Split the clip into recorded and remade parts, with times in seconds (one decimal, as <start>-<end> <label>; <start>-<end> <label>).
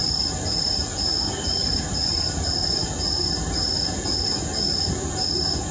0.0-5.7 recorded